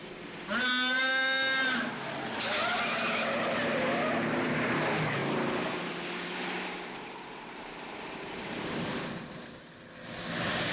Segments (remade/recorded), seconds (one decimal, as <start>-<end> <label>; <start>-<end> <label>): 0.0-5.2 recorded; 5.2-9.7 remade; 9.7-10.7 recorded